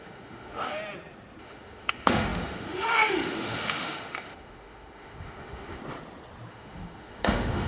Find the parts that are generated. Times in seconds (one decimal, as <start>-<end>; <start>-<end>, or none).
0.0-0.8; 1.4-5.8; 6.5-7.7